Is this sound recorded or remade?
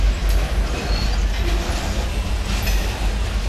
recorded